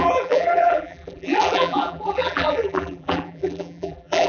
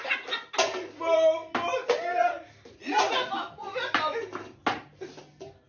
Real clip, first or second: second